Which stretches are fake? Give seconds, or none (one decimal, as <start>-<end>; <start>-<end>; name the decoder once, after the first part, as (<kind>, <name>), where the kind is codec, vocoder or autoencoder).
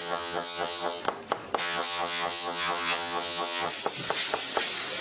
0.0-1.0 (vocoder, HiFi-GAN); 1.6-3.7